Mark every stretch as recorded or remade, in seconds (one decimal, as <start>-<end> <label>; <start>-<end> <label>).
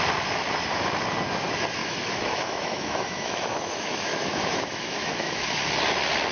0.0-1.8 recorded; 1.8-5.6 remade; 5.6-6.3 recorded